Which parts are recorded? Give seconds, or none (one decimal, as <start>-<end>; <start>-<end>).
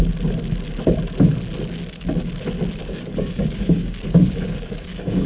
0.0-2.8